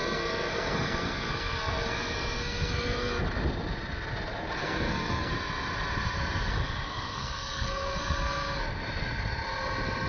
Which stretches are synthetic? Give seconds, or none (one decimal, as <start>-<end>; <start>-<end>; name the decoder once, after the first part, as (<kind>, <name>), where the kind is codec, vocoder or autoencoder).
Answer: 0.0-3.1 (codec, SNAC); 4.6-5.3; 6.5-8.6